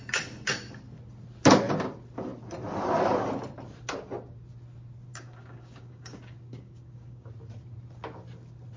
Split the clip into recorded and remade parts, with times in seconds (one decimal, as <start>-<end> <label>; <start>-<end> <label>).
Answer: 0.0-5.1 recorded; 5.1-7.3 remade; 7.3-8.8 recorded